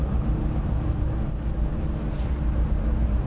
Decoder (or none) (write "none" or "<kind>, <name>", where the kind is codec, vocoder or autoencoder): vocoder, BigVGAN v2